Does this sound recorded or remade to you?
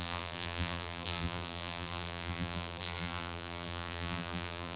remade